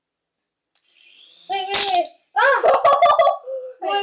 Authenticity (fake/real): real